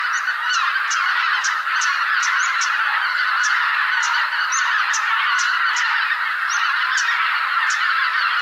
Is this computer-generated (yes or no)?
no